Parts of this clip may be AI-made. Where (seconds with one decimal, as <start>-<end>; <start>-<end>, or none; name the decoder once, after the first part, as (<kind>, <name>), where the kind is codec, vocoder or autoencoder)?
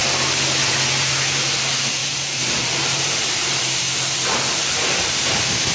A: 2.0-5.1 (vocoder, BigVGAN v2)